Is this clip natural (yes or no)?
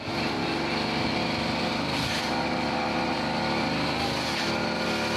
yes